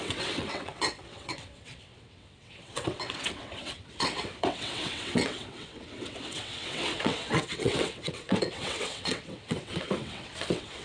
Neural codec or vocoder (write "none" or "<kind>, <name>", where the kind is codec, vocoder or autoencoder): vocoder, WaveNeXt